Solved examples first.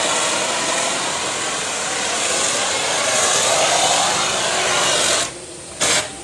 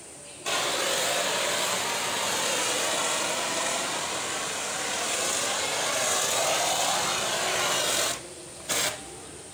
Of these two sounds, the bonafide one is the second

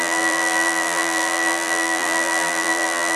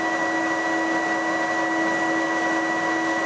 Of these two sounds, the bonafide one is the second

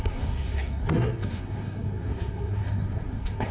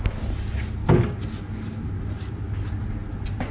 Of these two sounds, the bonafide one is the second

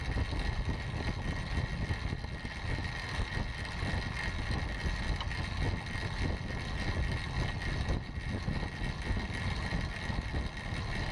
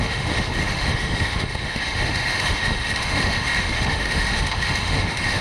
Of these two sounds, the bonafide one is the first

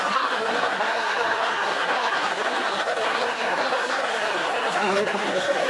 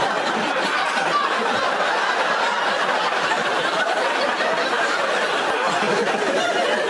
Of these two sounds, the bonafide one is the second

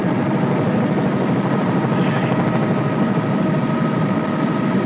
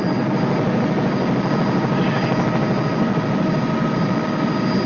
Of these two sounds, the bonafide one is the second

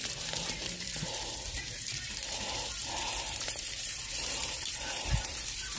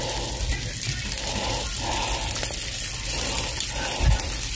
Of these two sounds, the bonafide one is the second